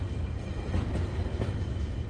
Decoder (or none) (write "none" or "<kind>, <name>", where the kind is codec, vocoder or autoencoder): none